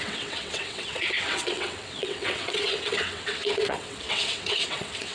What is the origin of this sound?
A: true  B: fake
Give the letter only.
B